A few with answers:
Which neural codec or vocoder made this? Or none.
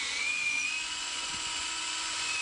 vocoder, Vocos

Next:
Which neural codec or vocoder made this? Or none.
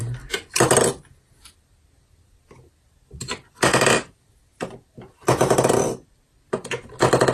none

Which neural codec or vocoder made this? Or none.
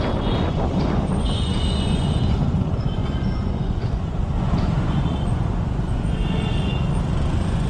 vocoder, Vocos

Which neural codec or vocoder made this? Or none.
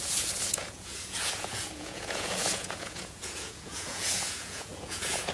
vocoder, Vocos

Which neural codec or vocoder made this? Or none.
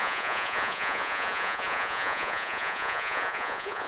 vocoder, Vocos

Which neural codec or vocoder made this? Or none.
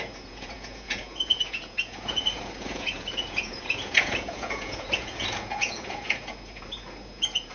vocoder, Vocos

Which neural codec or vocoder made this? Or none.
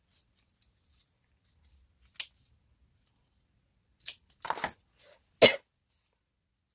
none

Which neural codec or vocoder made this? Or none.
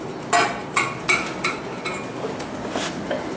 none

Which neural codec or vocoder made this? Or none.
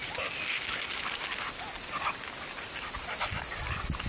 none